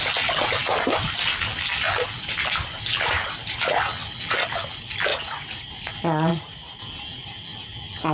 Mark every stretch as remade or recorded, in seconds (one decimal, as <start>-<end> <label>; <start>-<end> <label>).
0.0-5.1 recorded; 5.1-5.7 remade; 5.7-6.3 recorded; 6.3-6.8 remade; 6.8-8.1 recorded